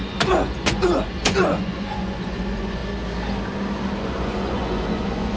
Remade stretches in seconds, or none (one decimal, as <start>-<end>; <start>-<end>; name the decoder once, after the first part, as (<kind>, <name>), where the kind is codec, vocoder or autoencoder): 0.0-2.8 (vocoder, Vocos); 4.0-5.4